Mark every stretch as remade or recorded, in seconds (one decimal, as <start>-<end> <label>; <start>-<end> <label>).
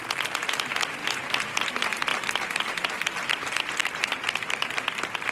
0.0-1.0 recorded; 1.0-1.7 remade; 1.7-3.8 recorded; 3.8-4.7 remade; 4.7-5.3 recorded